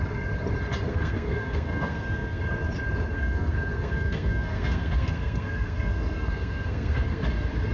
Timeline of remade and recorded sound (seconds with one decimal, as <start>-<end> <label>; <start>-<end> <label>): 0.0-0.9 recorded; 0.9-2.4 remade; 2.4-3.1 recorded; 3.1-7.2 remade; 7.2-7.7 recorded